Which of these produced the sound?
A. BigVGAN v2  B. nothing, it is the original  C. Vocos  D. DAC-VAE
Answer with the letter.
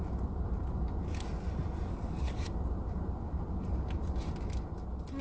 B